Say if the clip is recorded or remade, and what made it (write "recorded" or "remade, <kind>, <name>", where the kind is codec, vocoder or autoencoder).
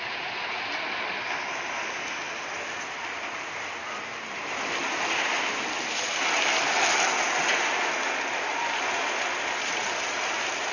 recorded